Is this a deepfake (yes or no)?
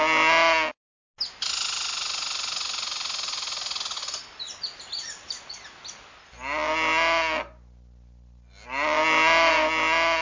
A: no